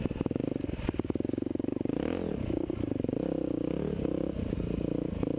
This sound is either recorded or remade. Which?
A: recorded